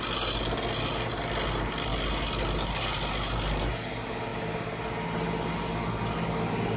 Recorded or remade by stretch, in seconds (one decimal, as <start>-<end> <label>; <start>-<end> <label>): 0.0-6.8 recorded